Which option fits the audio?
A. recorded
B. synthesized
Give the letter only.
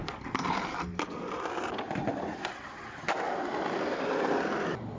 A